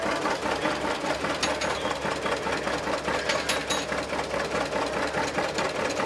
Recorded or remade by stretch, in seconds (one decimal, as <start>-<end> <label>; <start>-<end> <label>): 0.0-6.1 recorded

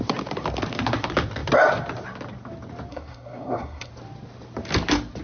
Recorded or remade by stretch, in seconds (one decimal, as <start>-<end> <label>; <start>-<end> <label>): 0.0-2.9 recorded; 2.9-3.9 remade; 3.9-5.2 recorded

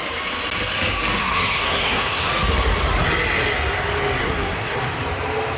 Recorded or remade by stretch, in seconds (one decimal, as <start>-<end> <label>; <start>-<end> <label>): 0.0-1.2 recorded; 1.2-2.3 remade; 2.3-4.2 recorded; 4.2-4.8 remade; 4.8-5.6 recorded

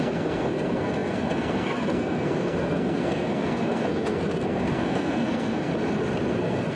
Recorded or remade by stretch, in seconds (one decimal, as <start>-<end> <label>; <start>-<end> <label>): 0.0-5.7 remade; 5.7-6.3 recorded; 6.3-6.8 remade

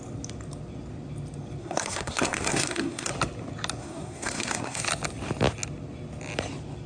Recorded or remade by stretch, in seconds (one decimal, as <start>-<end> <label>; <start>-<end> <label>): 0.0-1.6 recorded; 1.6-3.1 remade; 3.1-3.8 recorded; 3.8-4.8 remade; 4.8-6.9 recorded

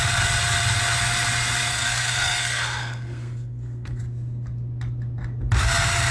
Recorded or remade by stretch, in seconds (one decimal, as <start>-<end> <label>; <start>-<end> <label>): 0.0-1.7 recorded; 1.7-4.0 remade; 4.0-6.1 recorded